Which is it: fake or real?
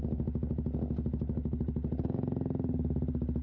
real